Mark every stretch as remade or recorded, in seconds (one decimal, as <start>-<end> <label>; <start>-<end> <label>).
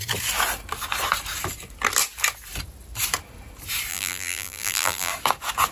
0.0-3.9 recorded; 3.9-5.1 remade; 5.1-5.7 recorded